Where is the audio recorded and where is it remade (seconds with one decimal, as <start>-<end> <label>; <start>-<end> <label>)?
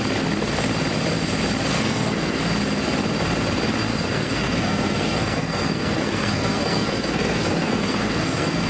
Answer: 0.0-1.7 recorded; 1.7-2.4 remade; 2.4-3.9 recorded; 3.9-8.7 remade